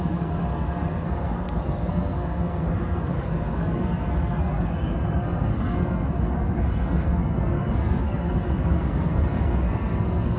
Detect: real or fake fake